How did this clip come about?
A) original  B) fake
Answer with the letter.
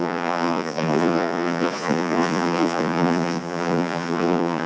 B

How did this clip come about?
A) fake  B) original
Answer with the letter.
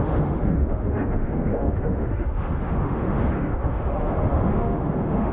A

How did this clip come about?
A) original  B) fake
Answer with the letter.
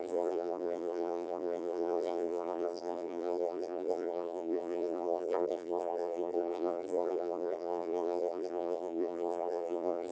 B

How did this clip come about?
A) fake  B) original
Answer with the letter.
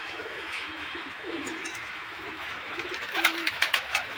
A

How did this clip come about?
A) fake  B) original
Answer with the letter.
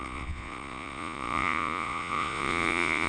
A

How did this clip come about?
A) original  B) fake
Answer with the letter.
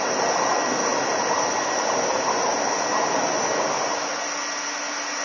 A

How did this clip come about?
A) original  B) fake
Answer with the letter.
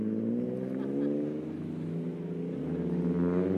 A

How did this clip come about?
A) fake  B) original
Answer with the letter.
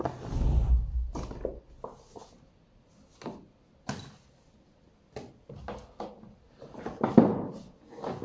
B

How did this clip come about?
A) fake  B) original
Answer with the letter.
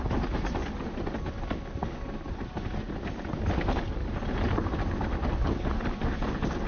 B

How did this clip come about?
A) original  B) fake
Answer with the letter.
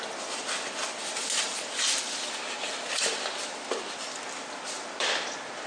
A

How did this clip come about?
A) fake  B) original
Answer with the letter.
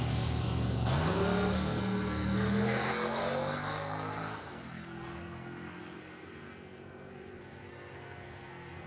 A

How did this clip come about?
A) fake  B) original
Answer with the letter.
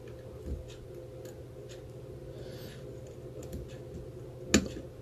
B